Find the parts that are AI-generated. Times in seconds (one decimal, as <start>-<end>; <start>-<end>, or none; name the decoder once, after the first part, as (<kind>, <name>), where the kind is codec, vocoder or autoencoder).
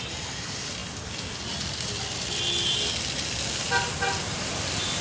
none